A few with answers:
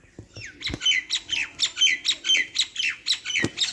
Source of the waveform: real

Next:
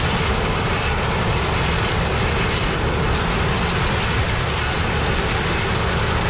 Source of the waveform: real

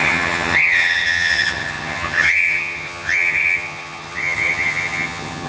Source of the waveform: fake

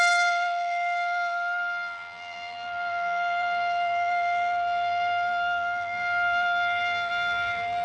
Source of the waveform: fake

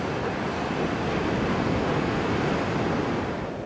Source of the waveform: real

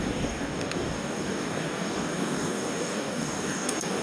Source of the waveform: fake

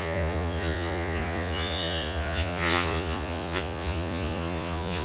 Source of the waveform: fake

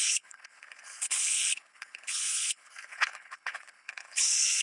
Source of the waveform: fake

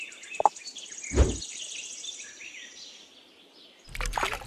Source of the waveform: real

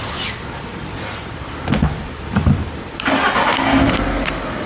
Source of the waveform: real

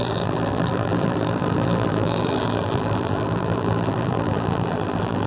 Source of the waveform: fake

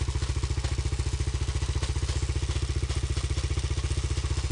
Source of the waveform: real